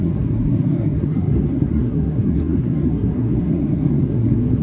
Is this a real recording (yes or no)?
no